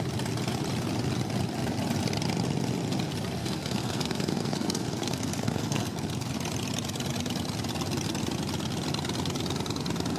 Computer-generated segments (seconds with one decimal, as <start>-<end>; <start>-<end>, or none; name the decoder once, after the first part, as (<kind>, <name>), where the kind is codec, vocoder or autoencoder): 3.4-6.3 (codec, SNAC)